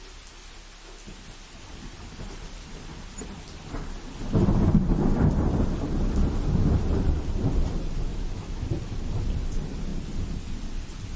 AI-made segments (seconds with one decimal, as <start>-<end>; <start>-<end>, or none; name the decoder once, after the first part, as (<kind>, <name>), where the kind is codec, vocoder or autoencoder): 8.1-8.7 (autoencoder, DAC-VAE)

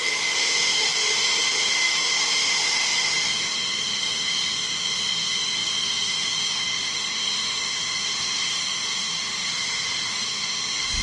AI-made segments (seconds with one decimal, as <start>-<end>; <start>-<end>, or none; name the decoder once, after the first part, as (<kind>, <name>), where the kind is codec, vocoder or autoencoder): 0.0-9.5 (autoencoder, DAC-VAE); 10.1-11.0

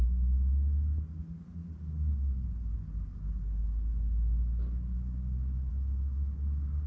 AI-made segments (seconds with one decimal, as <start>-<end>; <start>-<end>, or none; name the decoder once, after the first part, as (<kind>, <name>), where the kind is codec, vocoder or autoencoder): none

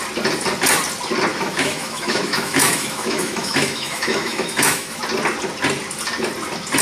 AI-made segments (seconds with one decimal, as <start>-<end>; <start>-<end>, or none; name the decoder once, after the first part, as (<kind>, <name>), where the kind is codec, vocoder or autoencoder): 1.3-5.0 (autoencoder, DAC-VAE)

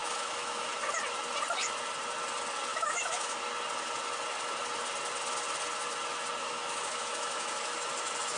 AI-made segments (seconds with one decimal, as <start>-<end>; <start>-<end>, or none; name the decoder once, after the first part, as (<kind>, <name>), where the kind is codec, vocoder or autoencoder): 0.0-0.7 (autoencoder, DAC-VAE); 2.7-3.4; 6.4-7.9

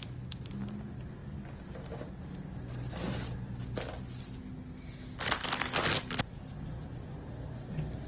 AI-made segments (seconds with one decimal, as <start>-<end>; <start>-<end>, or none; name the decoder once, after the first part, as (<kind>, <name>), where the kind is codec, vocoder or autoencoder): none

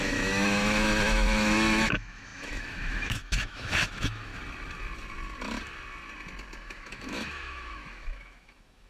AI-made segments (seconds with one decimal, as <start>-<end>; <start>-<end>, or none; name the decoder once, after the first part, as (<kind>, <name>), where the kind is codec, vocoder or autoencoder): 0.0-4.3 (autoencoder, DAC-VAE); 6.6-8.9